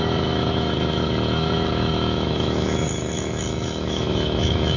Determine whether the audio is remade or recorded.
remade